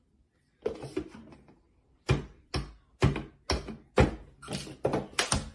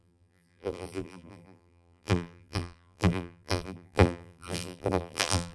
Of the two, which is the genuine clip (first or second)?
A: first